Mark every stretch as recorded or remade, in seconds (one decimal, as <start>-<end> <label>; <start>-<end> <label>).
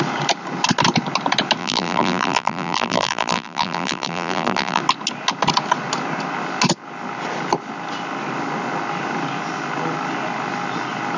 0.0-1.6 recorded; 1.6-4.8 remade; 4.8-11.2 recorded